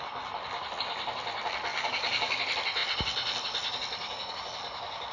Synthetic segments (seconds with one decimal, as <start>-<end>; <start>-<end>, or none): 1.7-2.4